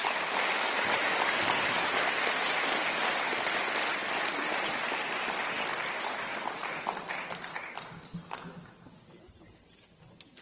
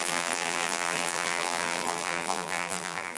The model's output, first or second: second